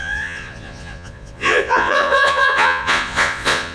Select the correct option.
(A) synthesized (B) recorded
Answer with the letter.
A